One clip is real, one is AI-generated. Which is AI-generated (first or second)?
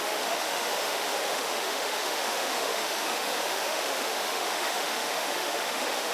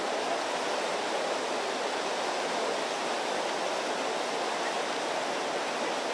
first